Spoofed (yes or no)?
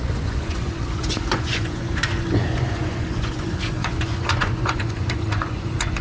yes